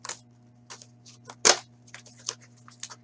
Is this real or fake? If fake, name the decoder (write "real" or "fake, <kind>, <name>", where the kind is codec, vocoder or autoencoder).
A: real